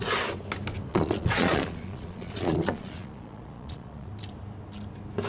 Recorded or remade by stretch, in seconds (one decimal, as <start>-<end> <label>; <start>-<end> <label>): 0.0-0.9 recorded; 0.9-4.1 remade; 4.1-5.3 recorded